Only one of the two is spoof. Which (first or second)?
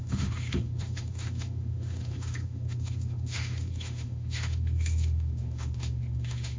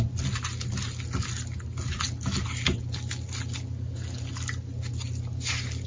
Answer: first